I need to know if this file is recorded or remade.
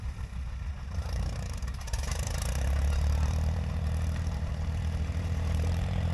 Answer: remade